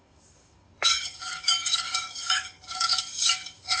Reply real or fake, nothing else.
fake